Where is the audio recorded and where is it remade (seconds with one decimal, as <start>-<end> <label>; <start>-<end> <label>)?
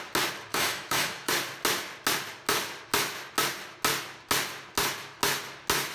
0.0-0.5 recorded; 0.5-1.3 remade; 1.3-5.9 recorded